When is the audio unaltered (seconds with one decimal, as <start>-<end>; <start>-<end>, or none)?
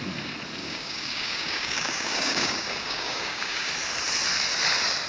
0.0-0.6; 3.7-5.1